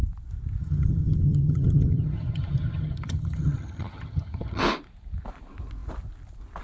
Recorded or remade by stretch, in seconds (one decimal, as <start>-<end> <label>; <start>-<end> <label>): 0.0-0.6 recorded; 0.6-4.6 remade; 4.6-6.6 recorded